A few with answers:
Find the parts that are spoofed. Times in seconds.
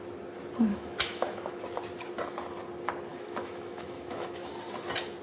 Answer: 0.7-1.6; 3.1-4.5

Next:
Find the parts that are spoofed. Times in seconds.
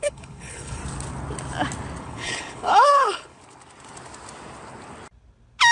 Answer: 0.0-0.8; 2.0-3.4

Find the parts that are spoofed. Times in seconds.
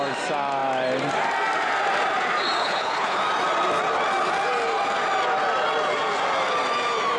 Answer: 2.6-3.2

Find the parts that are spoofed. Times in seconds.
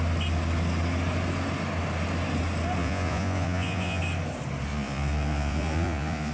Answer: 2.8-4.0; 4.7-6.3